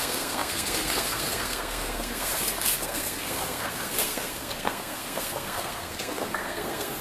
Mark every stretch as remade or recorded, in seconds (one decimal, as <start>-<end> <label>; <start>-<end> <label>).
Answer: 0.0-7.0 remade